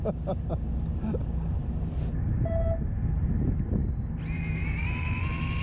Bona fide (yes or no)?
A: yes